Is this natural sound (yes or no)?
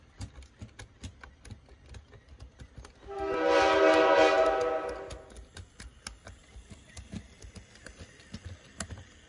yes